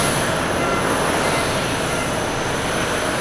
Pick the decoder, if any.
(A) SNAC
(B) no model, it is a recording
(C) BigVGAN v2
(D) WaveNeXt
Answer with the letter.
B